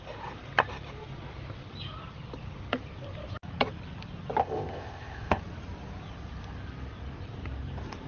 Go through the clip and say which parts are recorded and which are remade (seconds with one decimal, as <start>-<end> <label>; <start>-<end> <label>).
0.0-4.4 recorded; 4.4-5.4 remade; 5.4-8.1 recorded